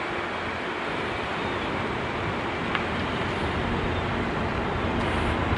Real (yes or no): yes